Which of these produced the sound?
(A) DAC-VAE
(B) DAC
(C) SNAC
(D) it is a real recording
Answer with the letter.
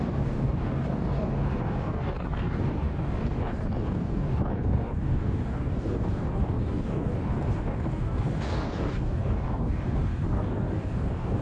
B